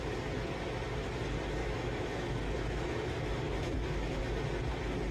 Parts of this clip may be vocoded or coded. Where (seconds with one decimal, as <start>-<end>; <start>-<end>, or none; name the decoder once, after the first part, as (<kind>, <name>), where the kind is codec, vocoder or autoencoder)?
1.6-4.2 (autoencoder, DAC-VAE)